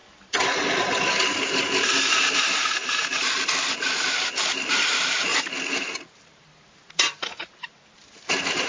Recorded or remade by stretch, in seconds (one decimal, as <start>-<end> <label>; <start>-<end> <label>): 0.0-0.8 recorded; 0.8-1.3 remade; 1.3-2.3 recorded; 2.3-8.7 remade

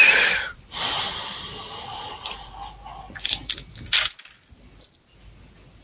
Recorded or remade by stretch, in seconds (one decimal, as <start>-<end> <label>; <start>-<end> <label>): 0.0-0.5 recorded; 0.5-2.5 remade; 2.5-5.8 recorded

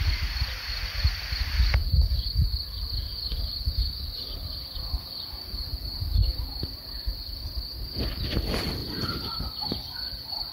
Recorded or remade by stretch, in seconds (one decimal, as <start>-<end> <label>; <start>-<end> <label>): 0.0-8.8 recorded; 8.8-9.4 remade; 9.4-10.5 recorded

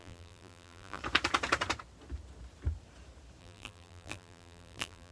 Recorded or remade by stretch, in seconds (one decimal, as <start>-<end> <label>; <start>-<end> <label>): 0.0-1.0 remade; 1.0-3.4 recorded; 3.4-5.1 remade

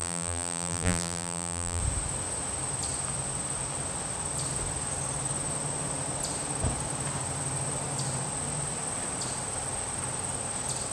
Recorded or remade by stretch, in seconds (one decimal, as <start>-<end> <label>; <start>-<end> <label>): 0.0-1.8 remade; 1.8-10.9 recorded